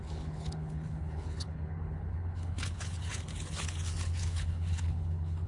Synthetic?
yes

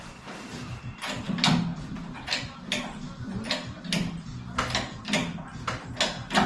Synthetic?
no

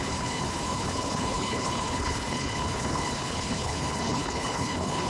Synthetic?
yes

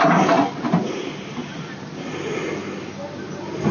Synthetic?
no